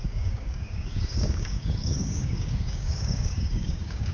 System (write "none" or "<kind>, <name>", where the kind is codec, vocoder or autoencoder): codec, DAC